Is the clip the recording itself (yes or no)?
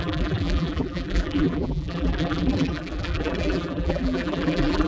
no